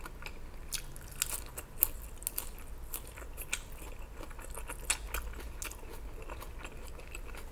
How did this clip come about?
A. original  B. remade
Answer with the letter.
A